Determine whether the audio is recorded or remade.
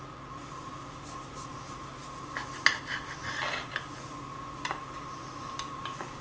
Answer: recorded